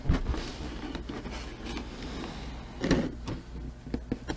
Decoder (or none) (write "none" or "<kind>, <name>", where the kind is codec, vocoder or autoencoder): none